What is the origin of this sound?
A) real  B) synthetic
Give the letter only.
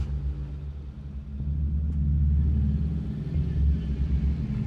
A